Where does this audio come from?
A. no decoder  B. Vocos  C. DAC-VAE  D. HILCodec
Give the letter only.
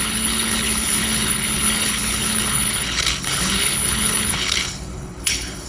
D